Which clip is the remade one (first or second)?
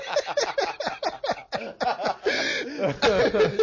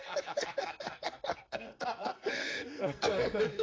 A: second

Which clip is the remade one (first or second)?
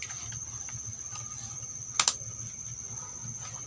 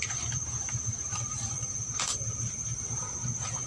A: second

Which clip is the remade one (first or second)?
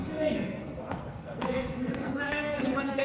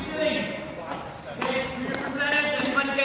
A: first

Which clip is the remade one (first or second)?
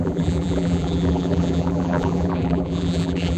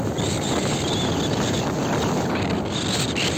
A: first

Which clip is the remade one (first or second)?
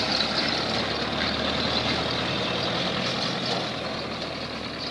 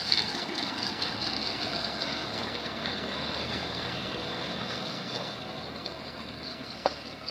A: second